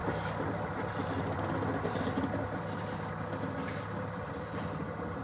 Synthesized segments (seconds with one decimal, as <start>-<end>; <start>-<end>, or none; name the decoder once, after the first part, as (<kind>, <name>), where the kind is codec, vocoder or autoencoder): none